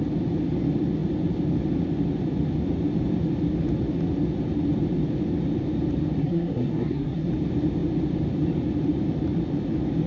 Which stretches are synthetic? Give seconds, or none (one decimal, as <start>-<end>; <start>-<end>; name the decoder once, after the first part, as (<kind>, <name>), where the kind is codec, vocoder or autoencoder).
6.2-7.3 (codec, SNAC)